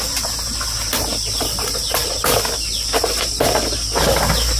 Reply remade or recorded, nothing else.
recorded